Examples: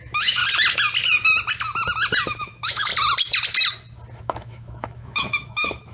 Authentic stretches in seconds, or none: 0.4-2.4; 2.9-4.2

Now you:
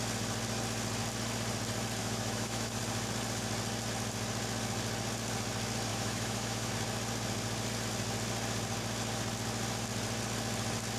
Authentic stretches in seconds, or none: 0.0-2.0; 2.8-5.9; 6.7-11.0